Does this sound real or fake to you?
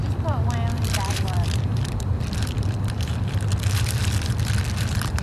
fake